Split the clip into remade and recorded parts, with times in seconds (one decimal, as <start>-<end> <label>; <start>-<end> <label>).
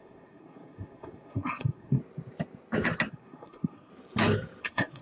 0.0-2.0 remade; 2.0-3.1 recorded; 3.1-3.9 remade; 3.9-4.6 recorded; 4.6-5.0 remade